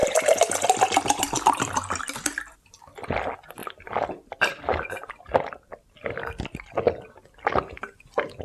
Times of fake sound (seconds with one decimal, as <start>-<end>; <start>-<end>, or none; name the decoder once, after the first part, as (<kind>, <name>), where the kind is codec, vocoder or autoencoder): 3.6-4.2 (vocoder, BigVGAN v2)